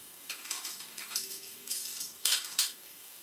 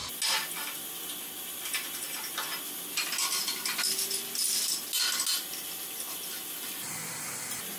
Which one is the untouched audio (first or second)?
second